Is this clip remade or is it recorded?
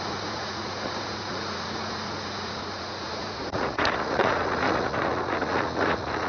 remade